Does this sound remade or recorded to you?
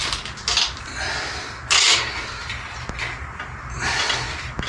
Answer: recorded